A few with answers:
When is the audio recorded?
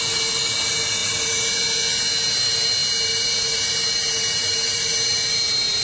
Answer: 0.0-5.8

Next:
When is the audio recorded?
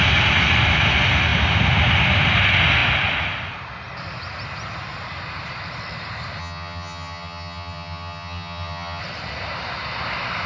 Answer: 0.0-6.4; 9.0-10.5